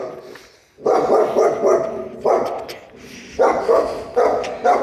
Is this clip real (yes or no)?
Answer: yes